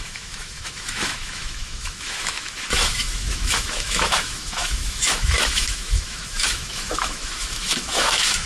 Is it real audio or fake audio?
fake